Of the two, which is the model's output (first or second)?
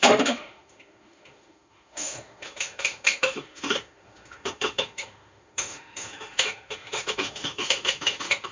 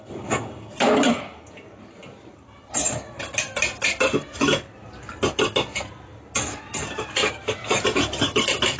first